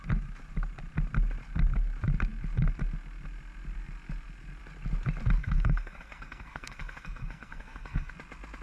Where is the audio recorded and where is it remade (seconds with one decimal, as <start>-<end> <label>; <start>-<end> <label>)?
0.0-5.4 recorded; 5.4-8.1 remade; 8.1-8.6 recorded